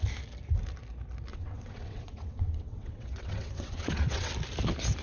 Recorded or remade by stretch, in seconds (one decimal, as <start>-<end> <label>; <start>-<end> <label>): 0.0-1.3 recorded; 1.3-4.3 remade; 4.3-5.0 recorded